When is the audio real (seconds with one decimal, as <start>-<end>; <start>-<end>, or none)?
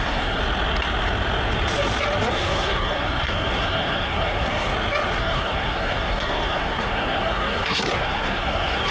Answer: 0.4-2.3; 4.7-5.2